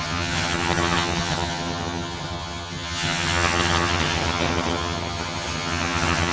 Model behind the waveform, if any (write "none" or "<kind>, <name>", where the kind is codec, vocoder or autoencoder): vocoder, HiFi-GAN